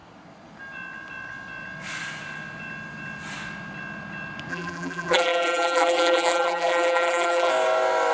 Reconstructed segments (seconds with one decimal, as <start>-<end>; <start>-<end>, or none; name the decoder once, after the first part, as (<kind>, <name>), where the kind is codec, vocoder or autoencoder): 4.5-7.5 (vocoder, BigVGAN v2)